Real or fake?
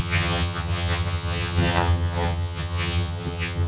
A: fake